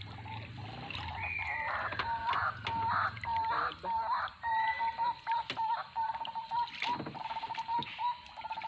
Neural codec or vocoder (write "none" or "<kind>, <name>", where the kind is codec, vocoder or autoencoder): none